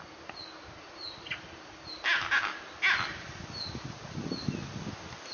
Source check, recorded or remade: recorded